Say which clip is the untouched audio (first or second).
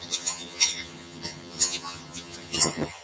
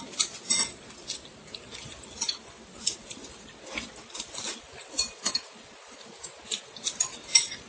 second